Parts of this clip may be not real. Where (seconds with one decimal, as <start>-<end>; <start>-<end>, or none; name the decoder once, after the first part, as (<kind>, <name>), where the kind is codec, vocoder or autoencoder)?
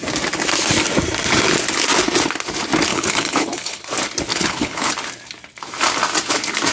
2.9-3.8 (codec, HILCodec); 4.3-4.9